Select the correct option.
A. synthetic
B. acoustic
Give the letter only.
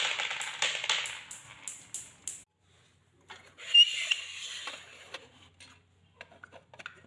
B